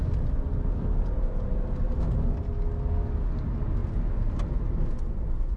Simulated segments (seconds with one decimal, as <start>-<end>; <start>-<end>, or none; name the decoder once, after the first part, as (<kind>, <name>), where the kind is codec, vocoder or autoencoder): none